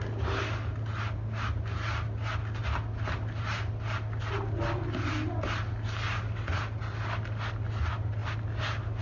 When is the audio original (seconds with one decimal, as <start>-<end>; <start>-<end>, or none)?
0.0-9.0